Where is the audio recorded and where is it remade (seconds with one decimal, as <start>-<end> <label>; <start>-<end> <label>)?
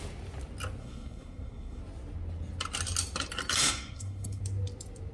0.0-0.8 recorded; 0.8-1.8 remade; 1.8-3.6 recorded; 3.6-4.4 remade; 4.4-5.1 recorded